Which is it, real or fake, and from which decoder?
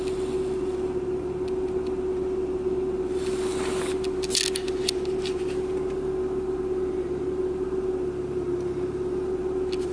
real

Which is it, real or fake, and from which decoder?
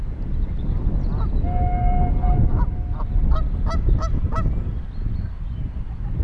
real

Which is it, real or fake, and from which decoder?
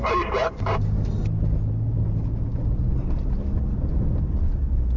real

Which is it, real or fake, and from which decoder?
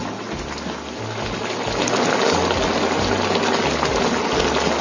real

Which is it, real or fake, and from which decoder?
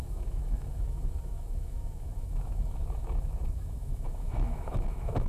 fake, autoencoder, DAC-VAE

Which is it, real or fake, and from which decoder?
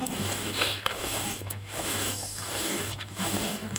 fake, codec, DAC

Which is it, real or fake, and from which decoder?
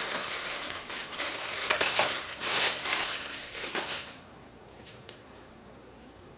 fake, codec, SNAC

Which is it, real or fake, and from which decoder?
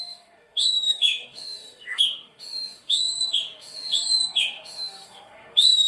fake, autoencoder, DAC-VAE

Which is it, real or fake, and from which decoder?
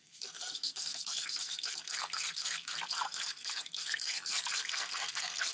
fake, codec, SNAC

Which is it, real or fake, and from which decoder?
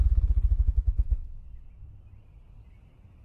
real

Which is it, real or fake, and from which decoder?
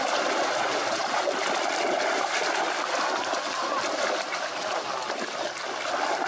real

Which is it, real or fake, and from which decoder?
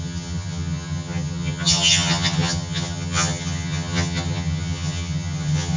fake, vocoder, HiFi-GAN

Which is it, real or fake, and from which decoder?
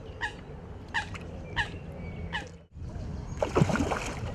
real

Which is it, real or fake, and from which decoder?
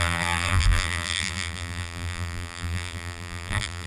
fake, vocoder, BigVGAN v2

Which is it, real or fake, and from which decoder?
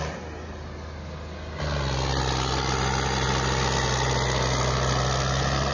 real